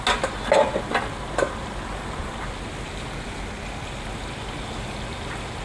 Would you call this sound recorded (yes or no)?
yes